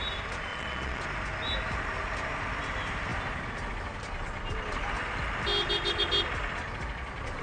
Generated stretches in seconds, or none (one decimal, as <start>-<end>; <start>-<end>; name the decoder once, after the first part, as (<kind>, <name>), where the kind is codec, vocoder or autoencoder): 0.5-1.0 (vocoder, Vocos)